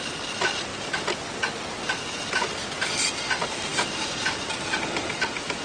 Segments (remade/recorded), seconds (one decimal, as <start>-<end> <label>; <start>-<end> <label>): 0.0-5.6 recorded